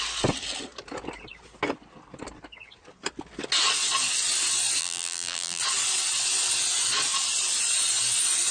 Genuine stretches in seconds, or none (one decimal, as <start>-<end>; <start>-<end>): 0.0-4.8; 5.6-8.5